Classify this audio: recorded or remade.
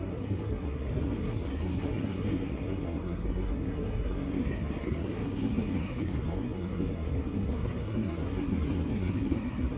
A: remade